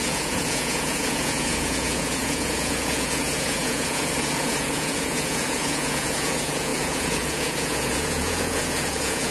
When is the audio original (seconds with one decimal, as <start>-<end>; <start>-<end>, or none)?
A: none